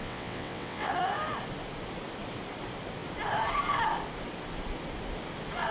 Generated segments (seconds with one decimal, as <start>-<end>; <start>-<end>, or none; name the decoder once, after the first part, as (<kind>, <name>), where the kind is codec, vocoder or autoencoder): 0.0-0.9 (vocoder, WaveNeXt)